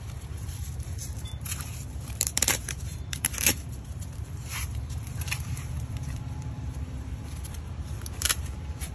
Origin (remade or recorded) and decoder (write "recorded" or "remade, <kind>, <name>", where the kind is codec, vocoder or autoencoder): remade, vocoder, BigVGAN v2